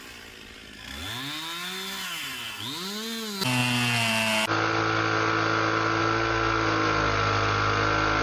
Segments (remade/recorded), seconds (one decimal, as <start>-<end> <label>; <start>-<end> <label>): 0.0-8.2 recorded